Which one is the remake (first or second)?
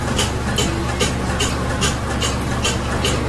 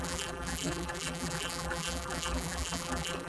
second